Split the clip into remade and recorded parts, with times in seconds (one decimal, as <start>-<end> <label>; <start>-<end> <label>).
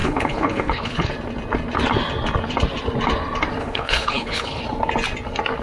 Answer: 0.0-1.1 remade; 1.1-3.6 recorded; 3.6-4.6 remade; 4.6-5.6 recorded